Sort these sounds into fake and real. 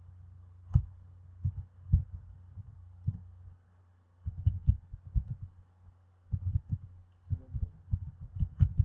fake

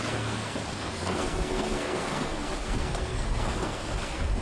fake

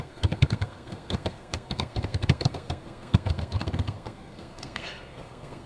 fake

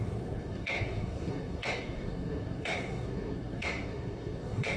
fake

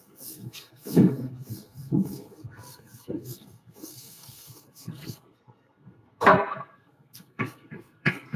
fake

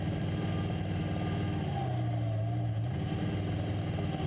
real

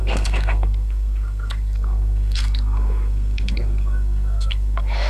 fake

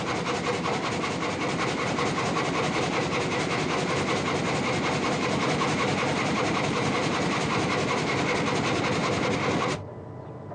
real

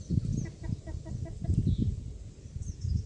real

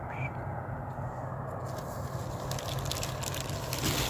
real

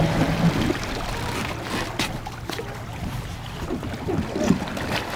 real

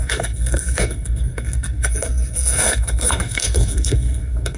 fake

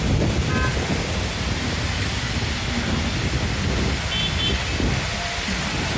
real